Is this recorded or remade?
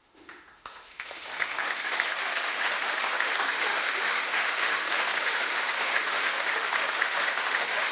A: remade